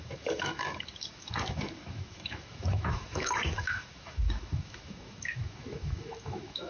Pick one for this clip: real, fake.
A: fake